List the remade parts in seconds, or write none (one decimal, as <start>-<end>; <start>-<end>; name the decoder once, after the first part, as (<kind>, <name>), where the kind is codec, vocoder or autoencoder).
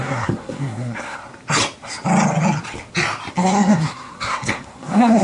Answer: 0.0-1.2 (codec, SNAC); 3.3-5.2